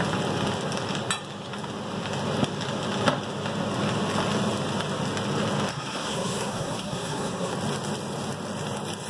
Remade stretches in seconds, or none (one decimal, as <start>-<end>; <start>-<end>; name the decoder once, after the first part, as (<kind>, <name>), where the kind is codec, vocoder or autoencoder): 5.7-7.5 (codec, SNAC)